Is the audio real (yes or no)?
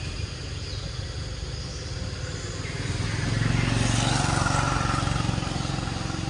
yes